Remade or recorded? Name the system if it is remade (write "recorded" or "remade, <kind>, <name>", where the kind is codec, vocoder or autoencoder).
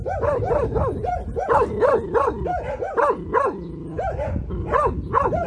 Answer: recorded